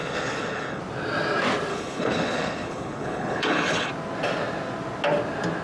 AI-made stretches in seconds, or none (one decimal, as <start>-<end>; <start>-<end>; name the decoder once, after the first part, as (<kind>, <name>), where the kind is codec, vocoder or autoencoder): 0.0-0.8 (codec, HILCodec); 1.7-3.9